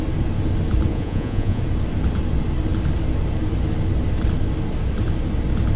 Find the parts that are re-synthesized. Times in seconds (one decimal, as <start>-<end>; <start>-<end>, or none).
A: 0.9-1.6